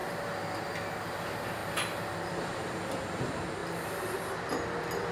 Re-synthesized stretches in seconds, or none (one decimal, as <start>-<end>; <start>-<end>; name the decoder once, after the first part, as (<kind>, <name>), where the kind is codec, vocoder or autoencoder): 1.1-3.6 (vocoder, BigVGAN v2)